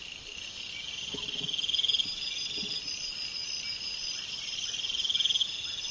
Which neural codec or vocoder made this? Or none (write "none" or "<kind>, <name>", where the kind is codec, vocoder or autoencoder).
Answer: none